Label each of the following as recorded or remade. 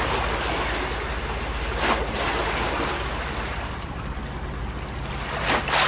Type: recorded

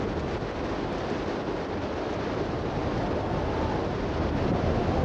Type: recorded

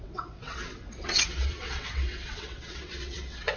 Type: remade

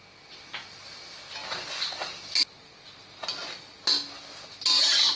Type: recorded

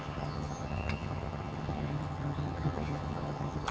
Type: remade